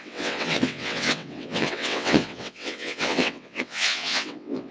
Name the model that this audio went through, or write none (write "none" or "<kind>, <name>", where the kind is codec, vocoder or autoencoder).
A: vocoder, WaveNeXt